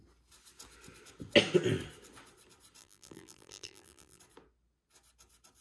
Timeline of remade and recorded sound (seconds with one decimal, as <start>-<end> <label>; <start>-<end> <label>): 0.0-2.8 recorded; 2.8-4.2 remade; 4.2-5.6 recorded